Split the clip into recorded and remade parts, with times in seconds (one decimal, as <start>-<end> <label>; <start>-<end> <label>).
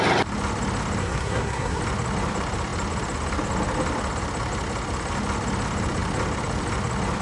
0.0-1.0 recorded; 1.0-1.8 remade; 1.8-7.2 recorded